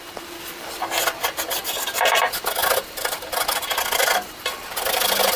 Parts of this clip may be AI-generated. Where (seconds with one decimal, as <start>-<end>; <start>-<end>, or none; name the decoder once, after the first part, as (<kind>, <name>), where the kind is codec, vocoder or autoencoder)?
none